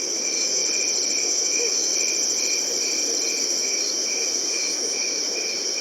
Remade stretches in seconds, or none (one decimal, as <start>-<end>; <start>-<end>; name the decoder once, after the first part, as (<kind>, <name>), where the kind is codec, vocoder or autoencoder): 0.0-0.6 (autoencoder, DAC-VAE); 1.2-1.9; 3.4-5.8